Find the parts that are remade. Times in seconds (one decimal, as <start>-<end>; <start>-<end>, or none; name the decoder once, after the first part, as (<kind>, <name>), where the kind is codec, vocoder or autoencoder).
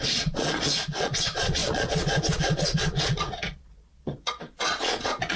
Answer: 0.0-5.4 (vocoder, Vocos)